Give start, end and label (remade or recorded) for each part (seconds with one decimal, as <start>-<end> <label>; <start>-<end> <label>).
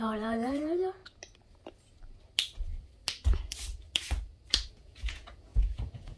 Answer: 0.0-1.0 remade; 1.0-4.7 recorded; 4.7-6.2 remade